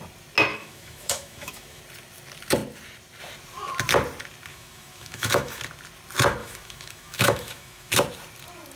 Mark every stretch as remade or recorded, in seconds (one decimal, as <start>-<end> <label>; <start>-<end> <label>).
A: 0.0-0.5 recorded; 0.5-1.8 remade; 1.8-4.5 recorded; 4.5-5.6 remade; 5.6-6.4 recorded; 6.4-7.9 remade; 7.9-8.8 recorded